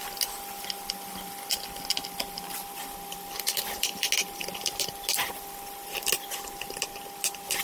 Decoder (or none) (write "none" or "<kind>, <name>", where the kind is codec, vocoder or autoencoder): none